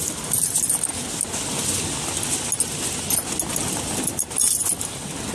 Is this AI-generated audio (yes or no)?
no